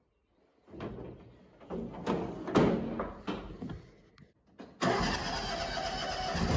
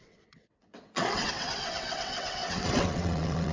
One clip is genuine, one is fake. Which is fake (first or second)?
second